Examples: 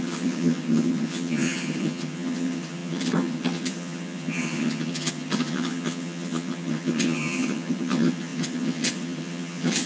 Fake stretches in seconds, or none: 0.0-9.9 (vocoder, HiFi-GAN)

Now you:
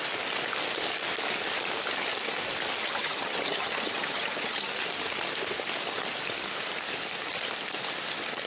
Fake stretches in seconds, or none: 2.8-4.7 (vocoder, HiFi-GAN)

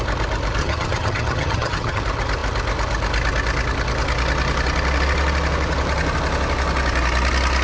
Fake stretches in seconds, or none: 0.6-2.0 (vocoder, HiFi-GAN)